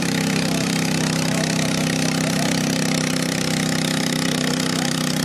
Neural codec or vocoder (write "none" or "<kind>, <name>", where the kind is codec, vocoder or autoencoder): vocoder, BigVGAN v2